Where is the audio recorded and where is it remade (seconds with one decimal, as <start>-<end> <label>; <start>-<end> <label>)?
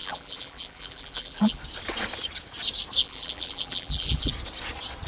0.0-1.6 remade; 1.6-3.0 recorded; 3.0-4.3 remade; 4.3-5.1 recorded